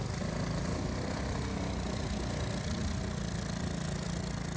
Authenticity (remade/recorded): recorded